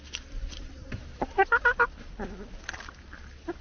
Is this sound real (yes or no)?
yes